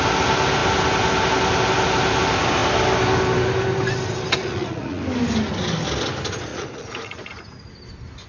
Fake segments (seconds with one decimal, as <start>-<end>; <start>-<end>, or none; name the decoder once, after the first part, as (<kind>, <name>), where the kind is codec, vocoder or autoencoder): 4.4-5.0 (vocoder, Vocos); 6.5-7.7